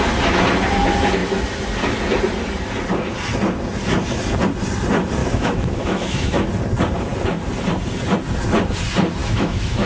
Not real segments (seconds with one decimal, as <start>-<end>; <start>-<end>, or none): 5.2-6.5; 9.2-9.9